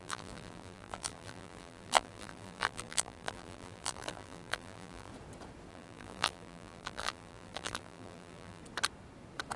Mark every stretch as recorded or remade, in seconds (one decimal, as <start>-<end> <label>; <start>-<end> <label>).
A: 0.0-5.1 remade; 5.1-5.7 recorded; 5.7-8.6 remade; 8.6-9.6 recorded